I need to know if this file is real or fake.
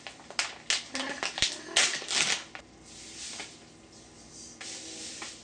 real